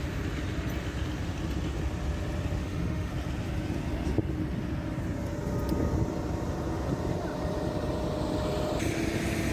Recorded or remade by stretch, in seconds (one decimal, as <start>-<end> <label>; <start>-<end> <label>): 0.0-2.6 recorded; 2.6-3.1 remade; 3.1-9.5 recorded